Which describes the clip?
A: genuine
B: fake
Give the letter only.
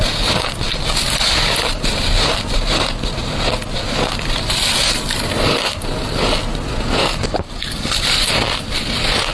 A